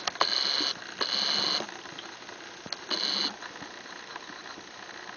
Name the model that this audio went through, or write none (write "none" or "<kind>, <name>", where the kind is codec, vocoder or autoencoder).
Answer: none